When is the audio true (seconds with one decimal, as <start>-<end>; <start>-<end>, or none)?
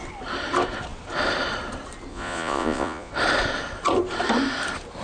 0.0-2.1; 3.1-5.0